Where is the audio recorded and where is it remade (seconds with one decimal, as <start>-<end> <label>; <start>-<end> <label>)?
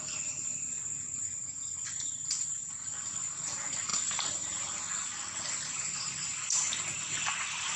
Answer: 0.0-7.8 recorded